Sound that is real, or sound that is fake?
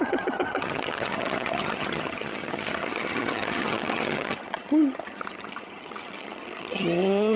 fake